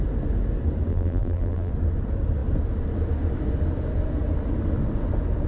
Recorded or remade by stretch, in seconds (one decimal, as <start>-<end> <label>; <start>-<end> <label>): 0.0-0.9 recorded; 0.9-1.7 remade; 1.7-5.5 recorded